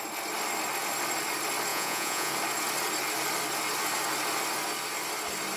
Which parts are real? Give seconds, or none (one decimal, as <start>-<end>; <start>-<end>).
0.0-1.7; 2.3-5.6

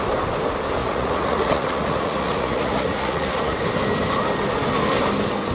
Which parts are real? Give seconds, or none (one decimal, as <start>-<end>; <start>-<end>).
0.0-0.8; 3.6-5.5

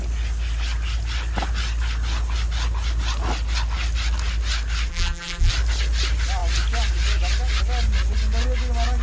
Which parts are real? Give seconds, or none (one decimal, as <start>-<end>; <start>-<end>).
0.0-4.9; 5.5-9.0

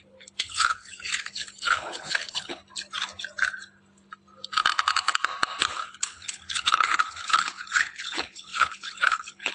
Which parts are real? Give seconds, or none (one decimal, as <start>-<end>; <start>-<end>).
2.6-5.7

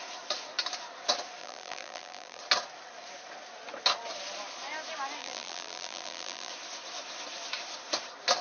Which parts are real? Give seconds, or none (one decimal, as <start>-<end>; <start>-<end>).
0.0-1.4; 2.4-5.2; 6.5-8.4

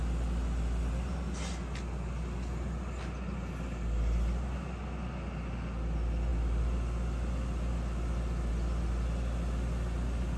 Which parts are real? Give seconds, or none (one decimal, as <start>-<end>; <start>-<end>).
0.0-10.4